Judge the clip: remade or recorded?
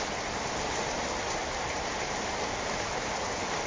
recorded